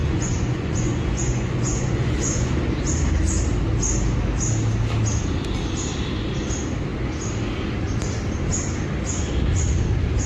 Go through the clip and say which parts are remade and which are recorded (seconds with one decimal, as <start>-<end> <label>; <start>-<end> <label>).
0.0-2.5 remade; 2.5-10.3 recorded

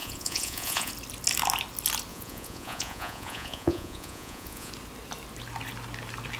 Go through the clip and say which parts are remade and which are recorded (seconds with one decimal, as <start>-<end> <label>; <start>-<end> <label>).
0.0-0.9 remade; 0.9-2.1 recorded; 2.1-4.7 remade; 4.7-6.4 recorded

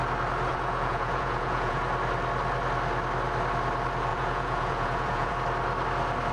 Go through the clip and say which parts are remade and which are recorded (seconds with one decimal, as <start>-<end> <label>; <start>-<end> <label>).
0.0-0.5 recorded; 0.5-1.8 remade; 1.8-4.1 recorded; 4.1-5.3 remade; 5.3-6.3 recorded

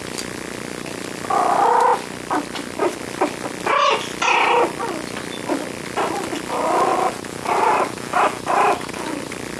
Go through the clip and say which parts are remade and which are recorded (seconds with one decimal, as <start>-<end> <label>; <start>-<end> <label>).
0.0-9.6 recorded